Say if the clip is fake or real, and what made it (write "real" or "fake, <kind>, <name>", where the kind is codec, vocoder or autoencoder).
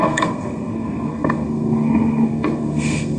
fake, codec, SNAC